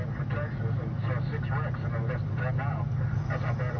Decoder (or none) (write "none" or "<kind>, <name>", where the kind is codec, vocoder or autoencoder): none